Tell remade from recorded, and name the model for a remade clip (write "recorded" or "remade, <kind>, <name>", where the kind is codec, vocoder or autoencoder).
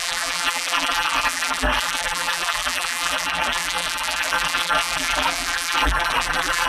remade, vocoder, BigVGAN v2